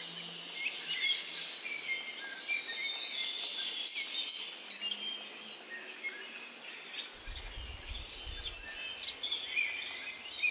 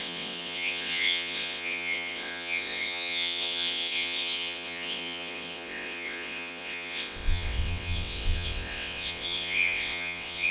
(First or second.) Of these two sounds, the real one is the first